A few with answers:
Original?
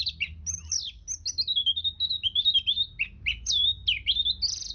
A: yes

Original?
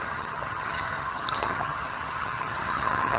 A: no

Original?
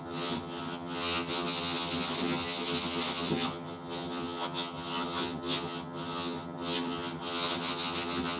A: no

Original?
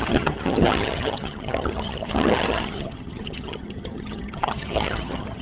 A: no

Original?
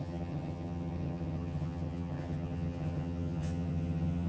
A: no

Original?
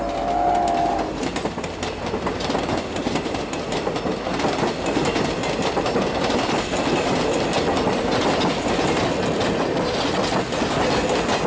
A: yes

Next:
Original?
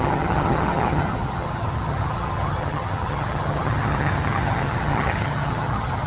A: no